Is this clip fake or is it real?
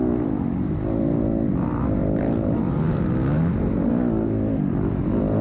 real